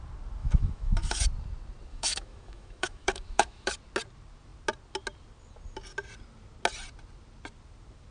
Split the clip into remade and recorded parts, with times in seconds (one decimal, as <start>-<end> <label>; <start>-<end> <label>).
0.0-0.4 recorded; 0.4-1.2 remade; 1.2-1.9 recorded; 1.9-3.7 remade; 3.7-8.1 recorded